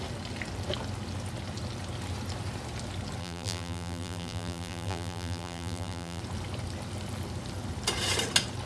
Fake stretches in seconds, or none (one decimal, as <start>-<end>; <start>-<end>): 3.2-6.2